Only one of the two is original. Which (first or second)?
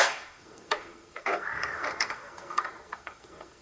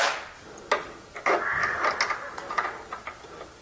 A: second